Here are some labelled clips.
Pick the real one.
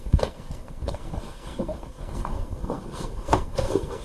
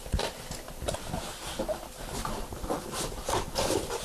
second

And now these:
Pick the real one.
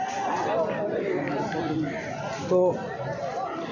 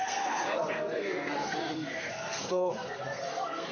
first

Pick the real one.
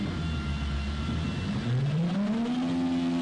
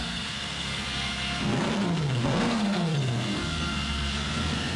first